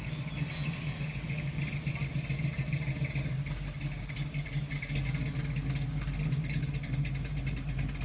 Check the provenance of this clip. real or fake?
real